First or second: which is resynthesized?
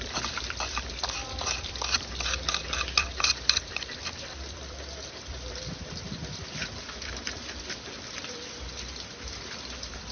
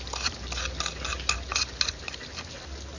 first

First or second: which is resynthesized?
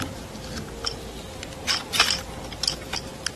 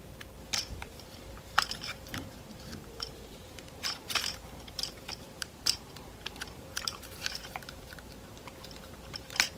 second